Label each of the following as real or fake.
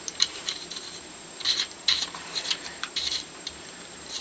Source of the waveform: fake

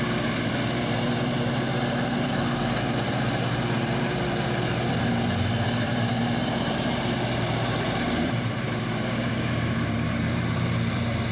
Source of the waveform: fake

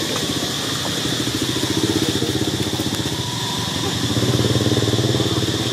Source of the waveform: real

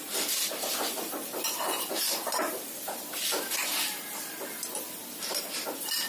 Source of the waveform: fake